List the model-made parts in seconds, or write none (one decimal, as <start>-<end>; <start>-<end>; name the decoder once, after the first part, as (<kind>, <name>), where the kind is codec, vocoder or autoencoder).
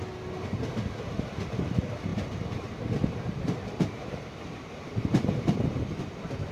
2.1-6.0 (vocoder, BigVGAN v2)